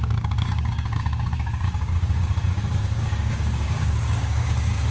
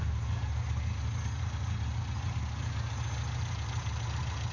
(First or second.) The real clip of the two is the second